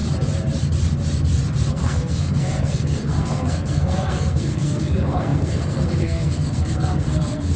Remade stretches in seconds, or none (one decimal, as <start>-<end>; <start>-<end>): 1.7-7.6